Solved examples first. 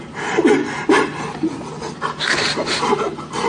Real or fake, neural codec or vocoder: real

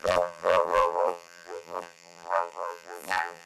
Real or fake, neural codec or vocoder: fake, vocoder, BigVGAN v2